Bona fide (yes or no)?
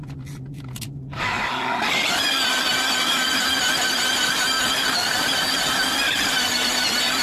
yes